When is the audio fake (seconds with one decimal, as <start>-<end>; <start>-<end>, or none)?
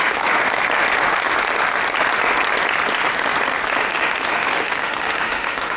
0.0-0.4; 3.9-5.8